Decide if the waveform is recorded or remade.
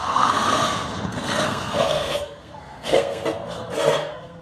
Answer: remade